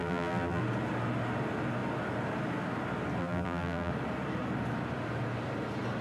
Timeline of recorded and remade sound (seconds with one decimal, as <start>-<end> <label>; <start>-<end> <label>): 0.0-0.6 remade; 0.6-3.2 recorded; 3.2-3.9 remade; 3.9-6.0 recorded